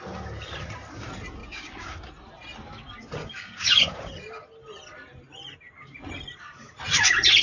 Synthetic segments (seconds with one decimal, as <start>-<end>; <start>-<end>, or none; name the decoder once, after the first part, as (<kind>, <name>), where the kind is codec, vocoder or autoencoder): 1.4-2.1 (codec, DAC); 3.2-4.1